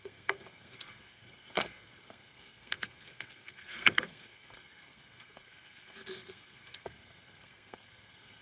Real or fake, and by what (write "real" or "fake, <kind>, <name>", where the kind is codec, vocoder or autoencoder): fake, codec, SNAC